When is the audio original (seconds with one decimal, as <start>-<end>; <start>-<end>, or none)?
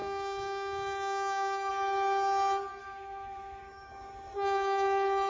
1.7-2.8